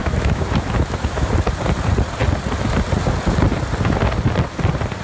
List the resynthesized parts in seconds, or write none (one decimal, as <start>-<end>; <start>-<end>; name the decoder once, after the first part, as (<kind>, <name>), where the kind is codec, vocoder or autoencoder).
0.0-1.3 (autoencoder, DAC-VAE)